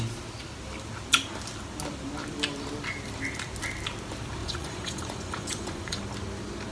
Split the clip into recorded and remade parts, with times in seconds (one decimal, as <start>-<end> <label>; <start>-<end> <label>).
0.0-4.4 recorded; 4.4-6.0 remade; 6.0-6.7 recorded